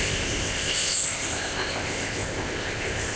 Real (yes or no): no